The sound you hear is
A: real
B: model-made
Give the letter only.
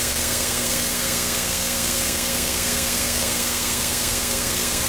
B